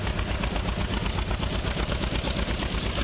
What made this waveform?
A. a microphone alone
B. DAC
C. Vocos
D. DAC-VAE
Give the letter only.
A